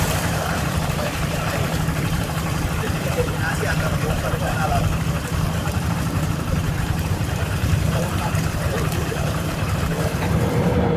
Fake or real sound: fake